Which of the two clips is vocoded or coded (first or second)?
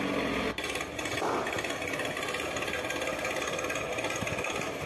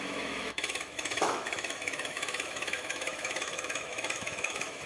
second